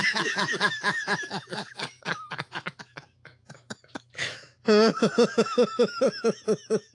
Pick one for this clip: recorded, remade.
remade